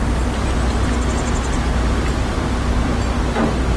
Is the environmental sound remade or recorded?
recorded